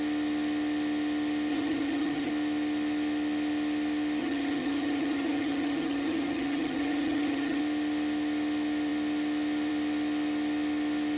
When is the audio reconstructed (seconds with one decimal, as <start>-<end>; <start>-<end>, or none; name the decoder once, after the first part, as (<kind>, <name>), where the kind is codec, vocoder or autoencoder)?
1.5-2.3 (vocoder, HiFi-GAN); 4.2-7.6